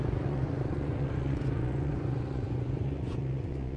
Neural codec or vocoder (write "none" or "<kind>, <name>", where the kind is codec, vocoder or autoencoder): vocoder, Vocos